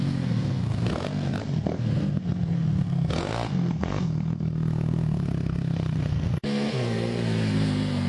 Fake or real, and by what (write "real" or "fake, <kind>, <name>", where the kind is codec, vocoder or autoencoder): fake, codec, SNAC